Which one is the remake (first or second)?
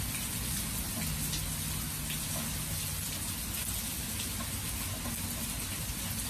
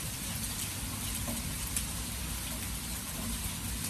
second